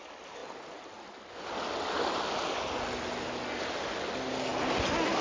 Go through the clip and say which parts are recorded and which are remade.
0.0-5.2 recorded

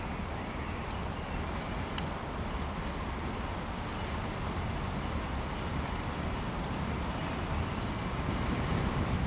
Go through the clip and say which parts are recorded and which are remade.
0.0-9.3 recorded

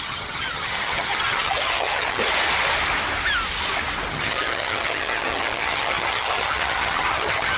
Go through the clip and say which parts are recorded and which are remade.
0.0-2.2 remade; 2.2-4.1 recorded; 4.1-7.6 remade

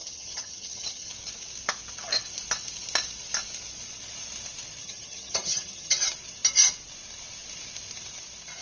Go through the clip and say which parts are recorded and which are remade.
0.0-1.1 remade; 1.1-4.8 recorded; 4.8-6.0 remade; 6.0-8.6 recorded

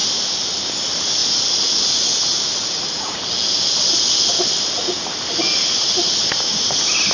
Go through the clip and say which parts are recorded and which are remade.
0.0-7.1 recorded

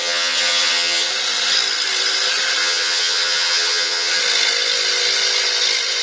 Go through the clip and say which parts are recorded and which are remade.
0.0-1.1 remade; 1.1-2.6 recorded; 2.6-4.2 remade; 4.2-6.0 recorded